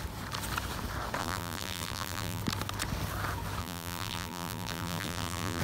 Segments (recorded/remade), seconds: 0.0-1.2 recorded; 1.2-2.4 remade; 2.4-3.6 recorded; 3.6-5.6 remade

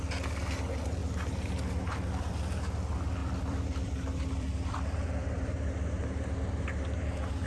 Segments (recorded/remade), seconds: 0.0-3.2 recorded; 3.2-5.9 remade; 5.9-7.5 recorded